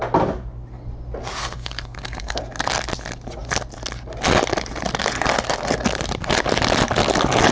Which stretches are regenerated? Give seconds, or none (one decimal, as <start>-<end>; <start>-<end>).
1.4-2.4